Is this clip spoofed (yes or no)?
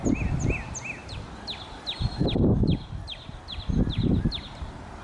no